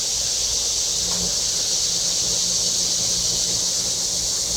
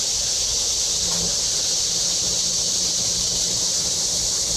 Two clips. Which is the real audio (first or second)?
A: first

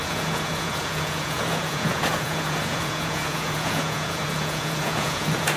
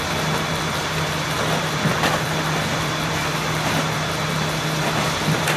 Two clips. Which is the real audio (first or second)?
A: second